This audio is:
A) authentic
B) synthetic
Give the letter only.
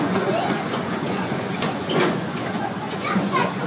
B